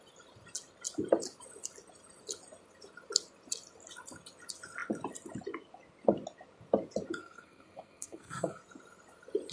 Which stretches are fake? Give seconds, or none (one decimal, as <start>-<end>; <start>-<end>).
7.2-8.6